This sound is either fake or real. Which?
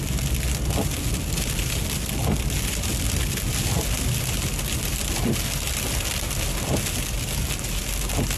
real